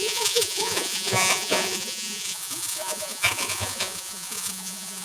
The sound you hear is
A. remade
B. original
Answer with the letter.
A